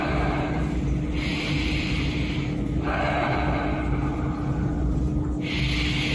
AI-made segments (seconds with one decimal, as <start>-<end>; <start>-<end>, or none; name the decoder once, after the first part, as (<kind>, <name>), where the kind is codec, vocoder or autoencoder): 1.3-5.0 (vocoder, BigVGAN v2)